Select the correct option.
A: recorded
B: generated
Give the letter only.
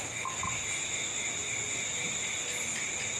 A